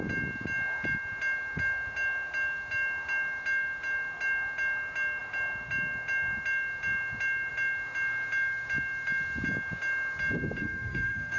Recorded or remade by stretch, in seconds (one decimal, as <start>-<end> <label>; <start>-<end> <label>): 0.0-10.6 recorded; 10.6-11.4 remade